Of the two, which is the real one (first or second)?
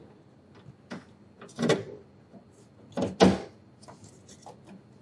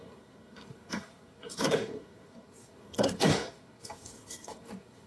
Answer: first